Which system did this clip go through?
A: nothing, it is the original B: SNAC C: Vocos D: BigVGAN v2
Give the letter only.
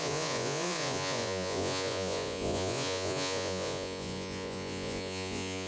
C